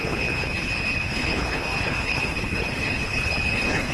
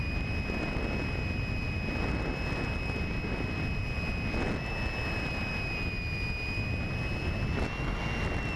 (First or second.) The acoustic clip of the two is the second